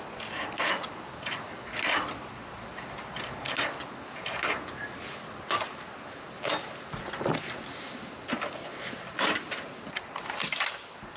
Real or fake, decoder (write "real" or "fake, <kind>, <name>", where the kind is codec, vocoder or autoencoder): real